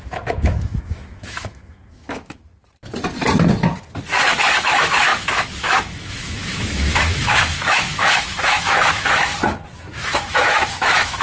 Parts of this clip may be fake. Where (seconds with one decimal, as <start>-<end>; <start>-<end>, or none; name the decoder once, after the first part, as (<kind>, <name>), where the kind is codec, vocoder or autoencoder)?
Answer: 0.0-2.5 (autoencoder, DAC-VAE); 4.6-9.3; 10.0-11.2